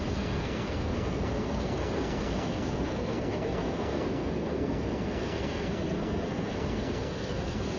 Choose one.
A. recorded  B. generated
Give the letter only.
B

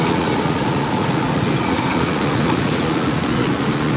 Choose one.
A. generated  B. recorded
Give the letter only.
A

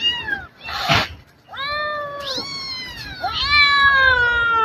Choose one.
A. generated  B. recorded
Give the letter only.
B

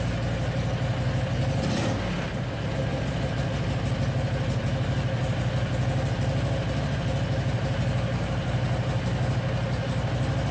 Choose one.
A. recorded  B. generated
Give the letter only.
A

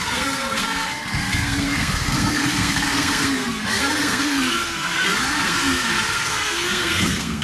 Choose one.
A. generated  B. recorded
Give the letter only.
A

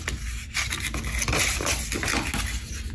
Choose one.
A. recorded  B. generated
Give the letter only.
A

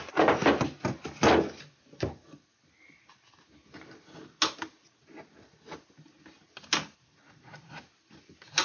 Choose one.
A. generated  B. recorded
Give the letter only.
B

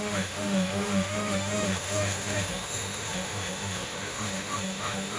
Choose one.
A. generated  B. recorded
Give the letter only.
A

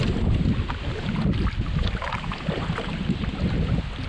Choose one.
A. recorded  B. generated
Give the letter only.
A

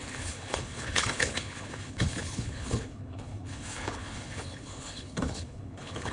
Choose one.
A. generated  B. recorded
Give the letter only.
A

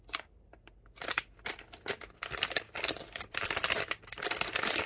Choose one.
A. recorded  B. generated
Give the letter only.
A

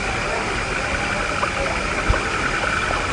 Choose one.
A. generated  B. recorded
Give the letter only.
B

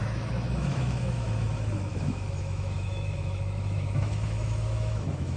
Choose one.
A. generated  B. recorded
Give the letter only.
A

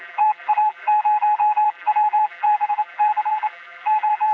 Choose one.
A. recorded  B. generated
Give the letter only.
B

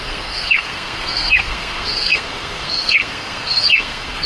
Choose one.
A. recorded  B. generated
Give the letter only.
B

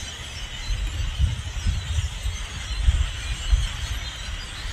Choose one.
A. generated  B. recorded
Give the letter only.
B